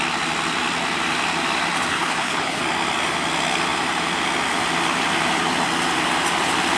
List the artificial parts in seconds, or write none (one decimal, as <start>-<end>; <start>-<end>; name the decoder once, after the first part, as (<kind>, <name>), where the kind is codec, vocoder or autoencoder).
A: 1.9-2.6 (codec, HILCodec)